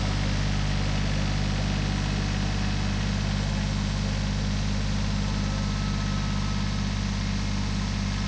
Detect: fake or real real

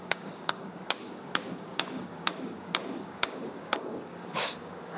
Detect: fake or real fake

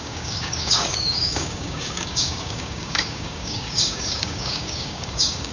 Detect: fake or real fake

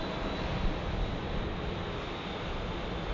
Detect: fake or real real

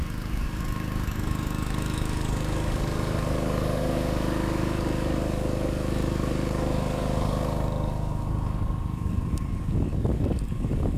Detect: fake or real fake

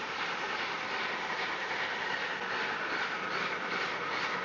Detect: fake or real real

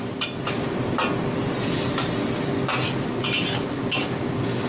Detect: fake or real real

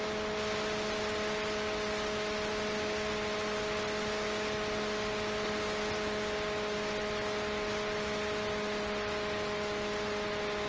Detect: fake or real real